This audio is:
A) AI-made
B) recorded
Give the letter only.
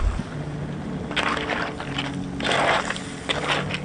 B